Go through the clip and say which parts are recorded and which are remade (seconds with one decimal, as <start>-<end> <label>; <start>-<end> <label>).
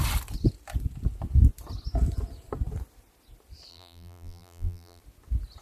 0.0-3.7 recorded; 3.7-5.0 remade; 5.0-5.6 recorded